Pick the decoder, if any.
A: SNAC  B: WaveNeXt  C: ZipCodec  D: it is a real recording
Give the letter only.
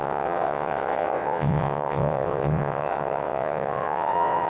B